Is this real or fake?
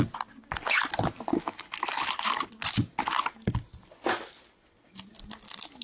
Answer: real